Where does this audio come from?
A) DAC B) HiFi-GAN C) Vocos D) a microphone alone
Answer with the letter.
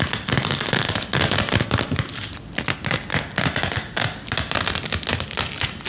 D